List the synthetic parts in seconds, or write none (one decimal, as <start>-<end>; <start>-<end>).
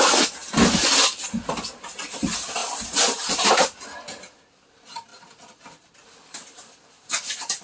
none